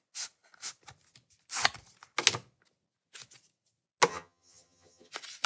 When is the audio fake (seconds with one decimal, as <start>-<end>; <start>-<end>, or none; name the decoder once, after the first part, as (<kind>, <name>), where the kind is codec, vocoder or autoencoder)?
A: 4.1-5.1 (vocoder, HiFi-GAN)